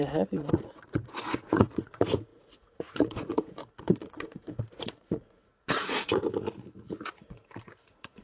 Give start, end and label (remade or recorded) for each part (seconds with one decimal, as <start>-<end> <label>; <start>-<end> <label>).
0.0-8.2 remade